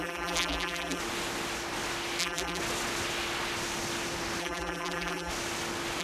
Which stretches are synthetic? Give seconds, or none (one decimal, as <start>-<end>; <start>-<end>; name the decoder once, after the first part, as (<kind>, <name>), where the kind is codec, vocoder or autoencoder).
0.0-1.0 (vocoder, BigVGAN v2); 2.2-2.6; 4.4-5.3